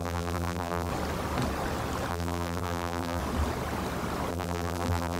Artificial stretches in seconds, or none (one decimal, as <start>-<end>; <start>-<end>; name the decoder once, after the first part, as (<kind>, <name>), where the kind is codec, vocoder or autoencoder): 0.0-0.9 (vocoder, BigVGAN v2); 2.1-3.2; 4.3-5.2